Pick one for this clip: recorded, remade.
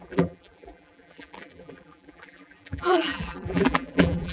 remade